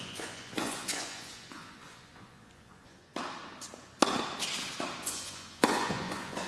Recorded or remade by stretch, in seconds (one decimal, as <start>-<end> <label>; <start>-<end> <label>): 0.0-3.1 remade; 3.1-5.0 recorded; 5.0-6.5 remade